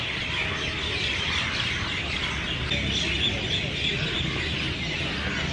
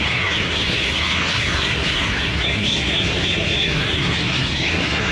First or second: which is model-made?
second